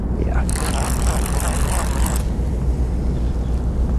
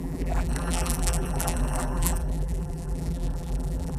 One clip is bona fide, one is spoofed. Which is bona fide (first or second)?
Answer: first